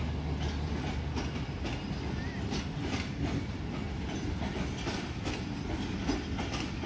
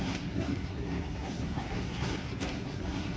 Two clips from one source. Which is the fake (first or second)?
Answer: second